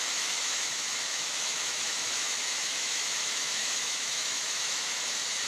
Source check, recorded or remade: remade